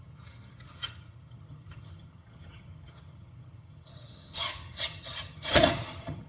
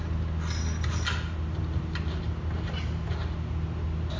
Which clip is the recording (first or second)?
second